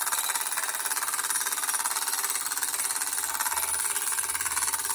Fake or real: real